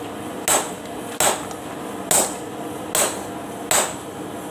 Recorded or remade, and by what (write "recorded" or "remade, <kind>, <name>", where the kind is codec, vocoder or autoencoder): recorded